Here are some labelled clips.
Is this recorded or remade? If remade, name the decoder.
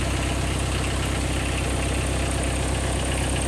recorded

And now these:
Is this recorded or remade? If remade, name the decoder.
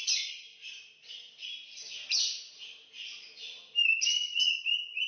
remade, vocoder, BigVGAN v2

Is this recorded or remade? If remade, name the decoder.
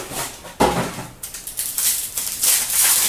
remade, vocoder, BigVGAN v2